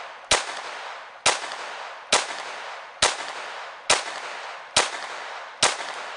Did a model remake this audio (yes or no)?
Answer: no